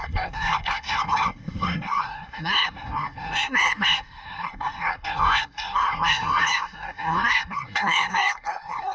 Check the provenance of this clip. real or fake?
fake